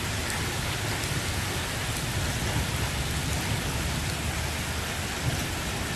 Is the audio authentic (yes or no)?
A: yes